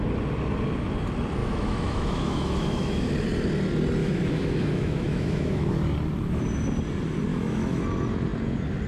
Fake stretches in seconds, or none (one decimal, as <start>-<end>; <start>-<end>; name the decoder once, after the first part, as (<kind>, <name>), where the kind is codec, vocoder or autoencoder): 1.4-3.1 (autoencoder, DAC-VAE); 4.0-5.7; 7.3-7.8